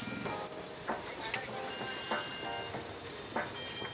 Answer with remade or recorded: recorded